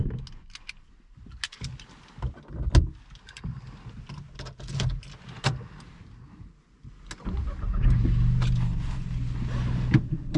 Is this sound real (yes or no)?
yes